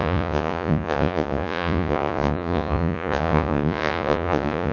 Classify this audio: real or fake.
fake